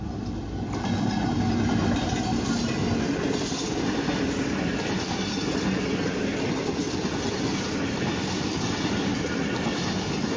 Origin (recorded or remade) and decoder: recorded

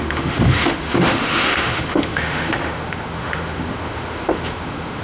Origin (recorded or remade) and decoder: remade, autoencoder, DAC-VAE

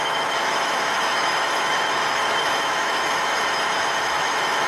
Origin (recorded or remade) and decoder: remade, autoencoder, DAC-VAE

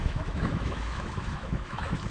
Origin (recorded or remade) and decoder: remade, autoencoder, DAC-VAE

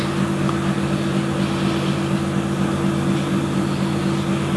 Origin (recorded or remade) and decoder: recorded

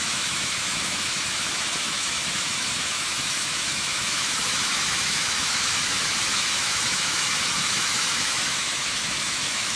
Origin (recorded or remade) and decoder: remade, autoencoder, DAC-VAE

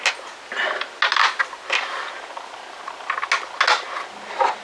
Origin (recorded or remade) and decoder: recorded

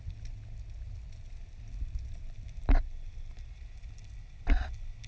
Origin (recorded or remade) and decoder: recorded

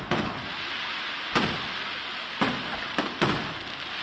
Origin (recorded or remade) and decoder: recorded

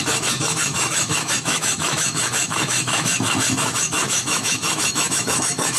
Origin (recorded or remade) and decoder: remade, autoencoder, DAC-VAE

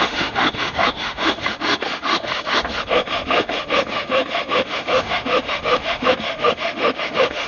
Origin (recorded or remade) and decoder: remade, autoencoder, DAC-VAE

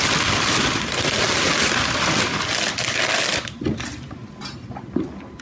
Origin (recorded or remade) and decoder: recorded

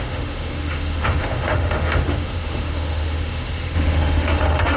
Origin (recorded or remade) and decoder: remade, autoencoder, DAC-VAE